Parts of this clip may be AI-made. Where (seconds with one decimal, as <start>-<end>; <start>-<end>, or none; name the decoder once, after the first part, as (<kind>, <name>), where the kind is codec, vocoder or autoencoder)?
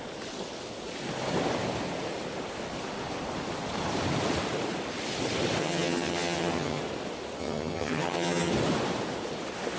5.6-6.8 (vocoder, HiFi-GAN); 7.4-8.5